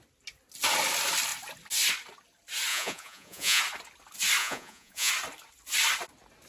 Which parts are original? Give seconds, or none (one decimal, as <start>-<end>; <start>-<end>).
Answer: 0.0-2.7; 3.6-4.4; 5.1-6.5